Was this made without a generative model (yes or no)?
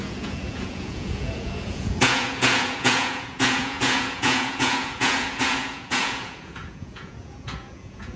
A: no